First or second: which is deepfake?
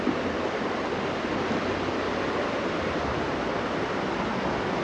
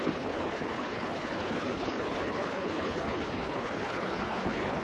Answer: second